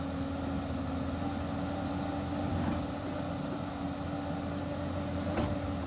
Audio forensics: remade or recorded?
recorded